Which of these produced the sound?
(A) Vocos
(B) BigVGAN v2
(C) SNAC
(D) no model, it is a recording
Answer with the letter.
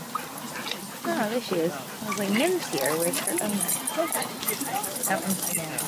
D